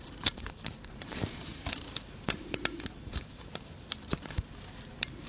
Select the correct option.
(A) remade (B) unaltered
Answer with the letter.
A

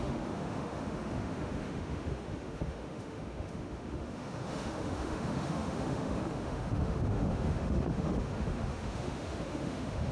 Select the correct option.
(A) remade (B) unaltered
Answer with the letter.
A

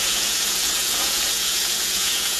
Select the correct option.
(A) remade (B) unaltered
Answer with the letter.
A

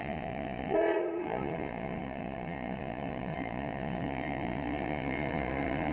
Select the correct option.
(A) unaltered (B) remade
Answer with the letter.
B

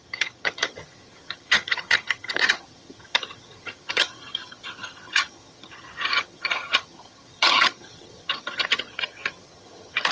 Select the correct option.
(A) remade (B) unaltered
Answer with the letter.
A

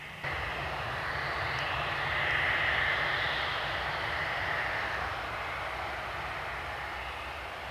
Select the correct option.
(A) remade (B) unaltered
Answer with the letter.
B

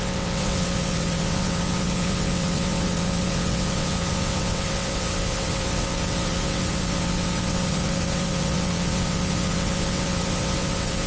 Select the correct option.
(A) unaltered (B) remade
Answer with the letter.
B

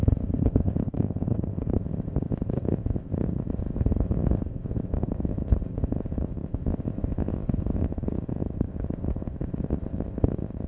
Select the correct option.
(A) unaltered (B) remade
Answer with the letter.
B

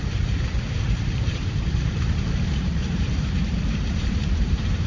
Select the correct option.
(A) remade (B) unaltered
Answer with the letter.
A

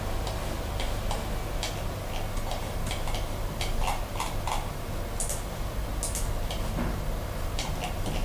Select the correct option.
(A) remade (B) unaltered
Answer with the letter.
B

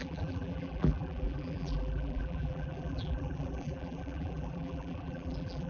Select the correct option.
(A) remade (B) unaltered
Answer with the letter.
A